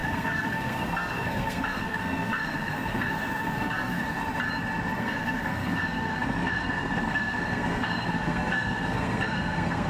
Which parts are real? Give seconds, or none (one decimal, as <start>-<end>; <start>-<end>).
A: 4.0-5.0